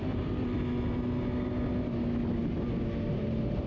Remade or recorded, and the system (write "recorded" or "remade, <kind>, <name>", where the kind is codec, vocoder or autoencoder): recorded